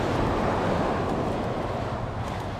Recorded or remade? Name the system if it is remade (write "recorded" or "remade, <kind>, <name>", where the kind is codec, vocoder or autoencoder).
recorded